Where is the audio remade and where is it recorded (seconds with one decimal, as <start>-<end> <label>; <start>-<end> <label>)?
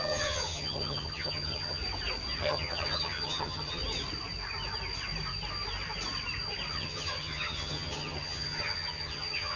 0.0-1.8 remade; 1.8-2.4 recorded; 2.4-3.8 remade; 3.8-6.7 recorded; 6.7-9.6 remade